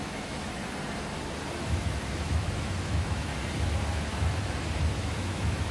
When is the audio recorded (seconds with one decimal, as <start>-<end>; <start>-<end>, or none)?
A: 0.6-1.7; 3.3-4.8